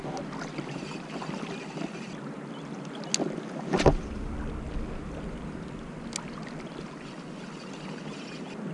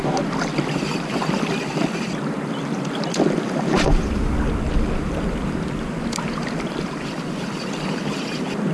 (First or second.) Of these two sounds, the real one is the first